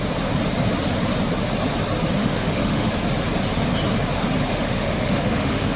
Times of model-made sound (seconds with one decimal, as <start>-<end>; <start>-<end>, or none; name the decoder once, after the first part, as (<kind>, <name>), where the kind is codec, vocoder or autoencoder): 2.2-2.9 (autoencoder, DAC-VAE); 4.5-5.8